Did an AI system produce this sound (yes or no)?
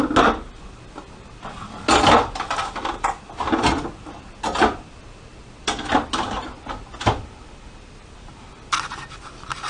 no